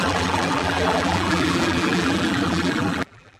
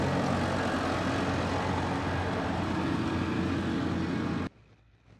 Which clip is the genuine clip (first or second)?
second